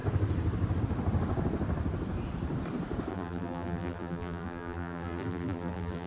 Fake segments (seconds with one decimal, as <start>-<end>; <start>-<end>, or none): 3.1-6.1